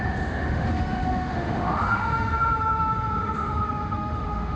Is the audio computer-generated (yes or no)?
yes